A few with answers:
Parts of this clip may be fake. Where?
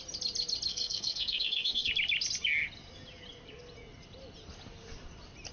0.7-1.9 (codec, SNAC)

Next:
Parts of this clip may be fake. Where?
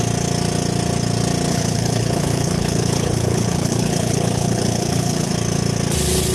1.5-5.3 (codec, HILCodec)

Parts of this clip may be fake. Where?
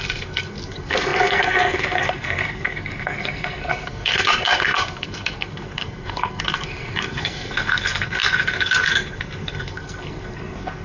0.0-10.8 (codec, SNAC)